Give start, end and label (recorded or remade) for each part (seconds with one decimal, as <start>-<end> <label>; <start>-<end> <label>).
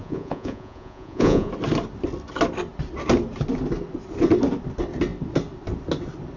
0.0-1.5 remade; 1.5-6.4 recorded